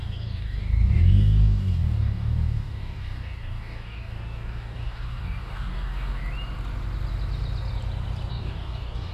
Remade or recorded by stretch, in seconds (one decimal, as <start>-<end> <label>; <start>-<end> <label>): 0.0-6.2 remade; 6.2-8.3 recorded; 8.3-9.1 remade